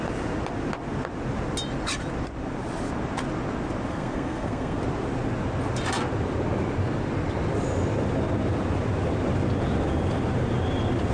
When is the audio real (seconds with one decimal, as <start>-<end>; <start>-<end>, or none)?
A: 0.0-3.9; 4.8-11.1